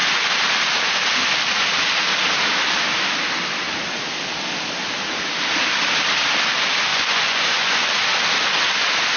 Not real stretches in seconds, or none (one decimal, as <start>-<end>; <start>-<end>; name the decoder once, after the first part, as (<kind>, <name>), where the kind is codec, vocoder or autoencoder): 6.9-7.9 (vocoder, Vocos)